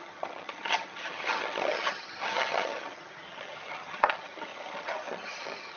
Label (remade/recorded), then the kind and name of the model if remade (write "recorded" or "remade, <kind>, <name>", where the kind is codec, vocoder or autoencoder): remade, vocoder, HiFi-GAN